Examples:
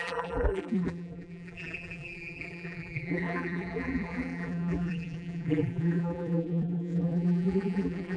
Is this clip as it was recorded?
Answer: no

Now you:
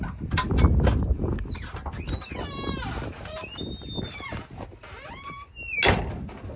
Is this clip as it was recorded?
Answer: yes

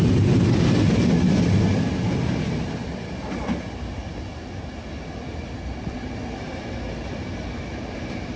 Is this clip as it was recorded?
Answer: yes